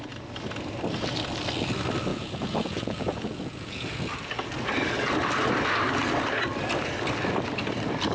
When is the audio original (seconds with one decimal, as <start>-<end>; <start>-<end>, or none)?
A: 0.0-2.1; 4.1-8.1